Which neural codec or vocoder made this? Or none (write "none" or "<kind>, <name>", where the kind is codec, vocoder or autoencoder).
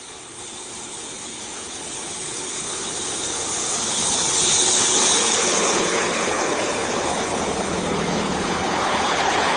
codec, HILCodec